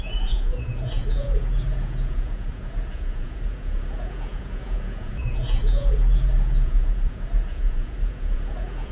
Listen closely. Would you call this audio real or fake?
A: fake